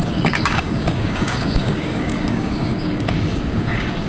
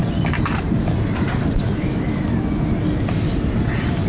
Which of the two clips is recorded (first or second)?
second